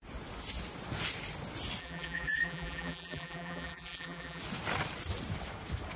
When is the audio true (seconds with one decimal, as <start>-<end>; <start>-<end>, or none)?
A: 0.0-1.8; 4.4-6.0